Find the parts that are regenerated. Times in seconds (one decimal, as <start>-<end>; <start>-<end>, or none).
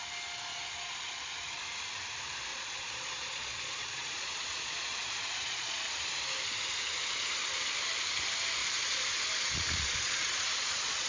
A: 0.5-1.6; 2.5-5.9; 8.6-11.1